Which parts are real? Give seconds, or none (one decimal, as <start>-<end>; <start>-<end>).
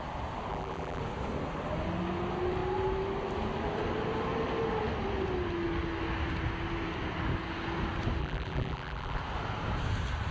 0.0-0.5; 1.0-8.2; 9.2-10.3